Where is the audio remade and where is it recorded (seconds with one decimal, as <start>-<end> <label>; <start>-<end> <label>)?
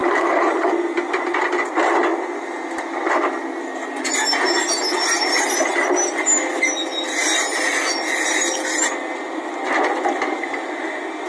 0.0-0.7 remade; 0.7-11.3 recorded